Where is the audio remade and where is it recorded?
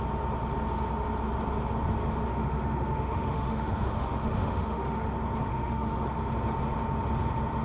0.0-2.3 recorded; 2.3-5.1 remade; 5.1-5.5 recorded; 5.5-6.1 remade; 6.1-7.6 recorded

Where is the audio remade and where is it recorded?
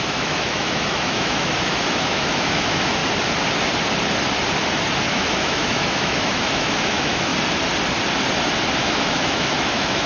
0.0-3.0 remade; 3.0-5.1 recorded; 5.1-7.3 remade; 7.3-8.8 recorded; 8.8-10.1 remade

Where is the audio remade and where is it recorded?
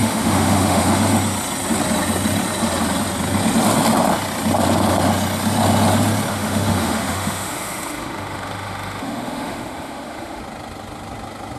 0.0-1.0 remade; 1.0-6.3 recorded; 6.3-10.4 remade; 10.4-11.6 recorded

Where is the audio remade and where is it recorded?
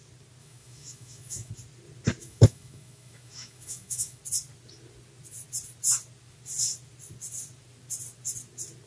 0.0-0.4 recorded; 0.4-1.5 remade; 1.5-2.2 recorded; 2.2-4.2 remade; 4.2-8.9 recorded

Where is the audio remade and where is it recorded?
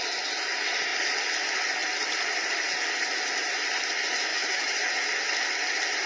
0.0-4.3 recorded; 4.3-4.9 remade; 4.9-6.1 recorded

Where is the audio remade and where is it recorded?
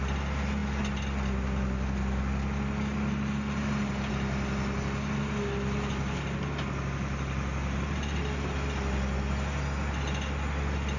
0.0-11.0 recorded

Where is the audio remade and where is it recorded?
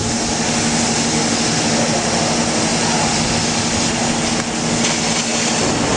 0.0-6.0 recorded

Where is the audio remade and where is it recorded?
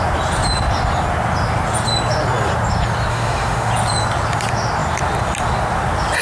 0.0-3.1 recorded; 3.1-3.7 remade; 3.7-6.2 recorded